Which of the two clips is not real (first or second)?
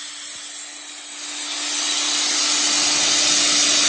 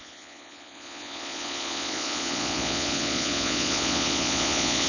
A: second